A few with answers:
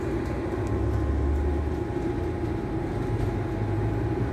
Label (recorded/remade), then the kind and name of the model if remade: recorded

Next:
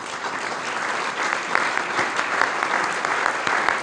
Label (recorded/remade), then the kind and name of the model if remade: recorded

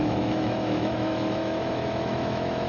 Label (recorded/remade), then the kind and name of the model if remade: remade, autoencoder, DAC-VAE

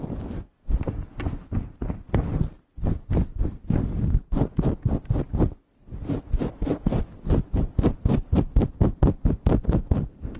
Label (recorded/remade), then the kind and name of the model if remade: recorded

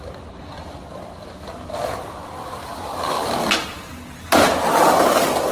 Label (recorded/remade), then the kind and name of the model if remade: recorded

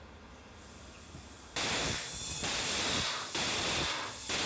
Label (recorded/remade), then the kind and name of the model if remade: recorded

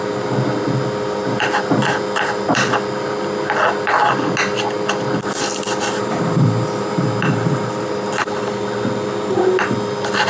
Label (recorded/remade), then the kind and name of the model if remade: recorded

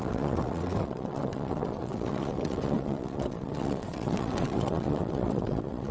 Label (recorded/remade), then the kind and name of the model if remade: remade, vocoder, WaveNeXt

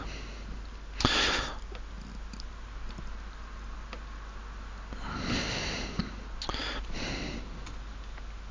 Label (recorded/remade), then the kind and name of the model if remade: recorded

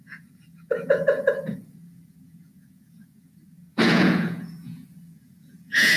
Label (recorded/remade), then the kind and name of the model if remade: remade, vocoder, Vocos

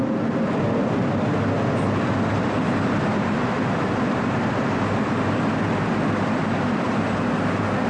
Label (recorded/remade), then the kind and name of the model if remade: recorded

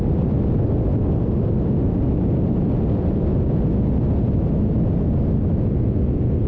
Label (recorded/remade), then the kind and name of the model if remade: recorded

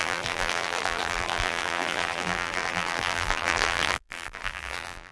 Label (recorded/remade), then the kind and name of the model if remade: remade, vocoder, BigVGAN v2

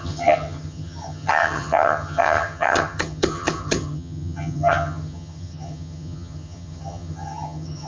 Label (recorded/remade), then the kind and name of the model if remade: remade, vocoder, HiFi-GAN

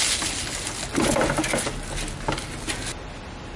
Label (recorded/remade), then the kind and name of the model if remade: recorded